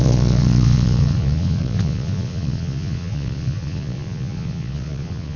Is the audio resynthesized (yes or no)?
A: yes